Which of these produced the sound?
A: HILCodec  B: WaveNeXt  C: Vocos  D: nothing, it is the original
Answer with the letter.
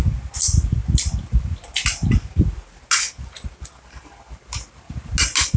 D